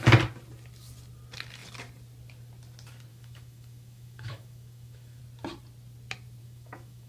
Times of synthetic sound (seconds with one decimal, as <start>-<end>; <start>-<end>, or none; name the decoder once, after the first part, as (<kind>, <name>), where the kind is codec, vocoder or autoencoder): 3.1-5.2 (autoencoder, DAC-VAE); 6.4-7.1